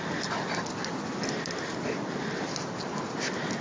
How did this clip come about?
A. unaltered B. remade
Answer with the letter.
A